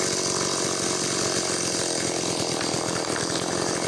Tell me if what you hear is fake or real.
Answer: real